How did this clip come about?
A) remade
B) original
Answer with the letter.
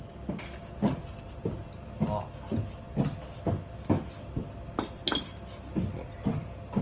B